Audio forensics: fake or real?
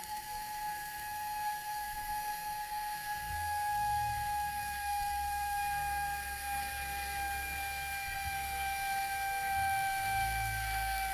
fake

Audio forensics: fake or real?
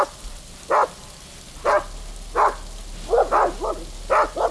real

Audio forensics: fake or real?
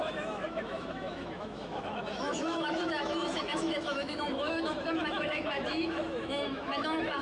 fake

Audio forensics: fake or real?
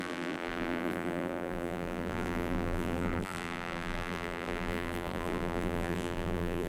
fake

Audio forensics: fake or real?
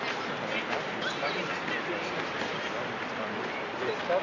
real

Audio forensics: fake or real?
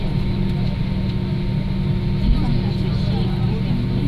real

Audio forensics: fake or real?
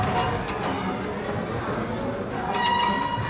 real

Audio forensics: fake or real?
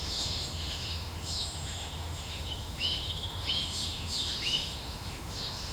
fake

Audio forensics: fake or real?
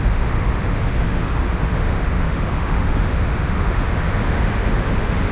fake